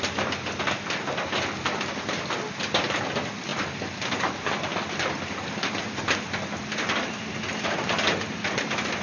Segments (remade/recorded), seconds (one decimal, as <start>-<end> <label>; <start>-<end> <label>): 0.0-9.0 recorded